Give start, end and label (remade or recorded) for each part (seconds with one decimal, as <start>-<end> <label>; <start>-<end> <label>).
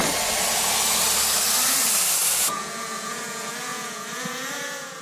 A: 0.0-2.3 recorded; 2.3-5.0 remade